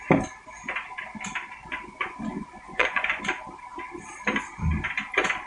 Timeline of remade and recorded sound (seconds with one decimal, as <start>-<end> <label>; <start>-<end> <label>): 0.0-1.6 recorded; 1.6-3.2 remade; 3.2-5.5 recorded